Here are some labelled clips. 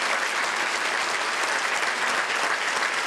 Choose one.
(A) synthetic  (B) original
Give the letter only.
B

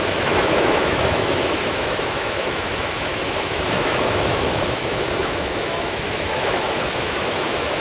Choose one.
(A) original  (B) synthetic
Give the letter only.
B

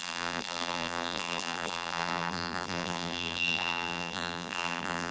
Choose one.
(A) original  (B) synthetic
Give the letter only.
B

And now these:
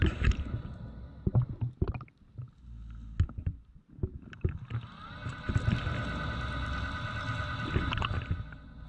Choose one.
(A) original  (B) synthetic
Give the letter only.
A